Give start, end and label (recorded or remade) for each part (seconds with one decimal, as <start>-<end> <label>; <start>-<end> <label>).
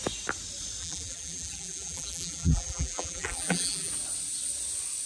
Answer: 0.0-0.8 recorded; 0.8-3.9 remade; 3.9-5.1 recorded